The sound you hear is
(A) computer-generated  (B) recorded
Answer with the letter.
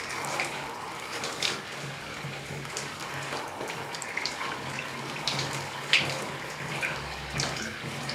A